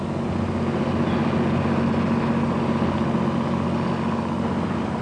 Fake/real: real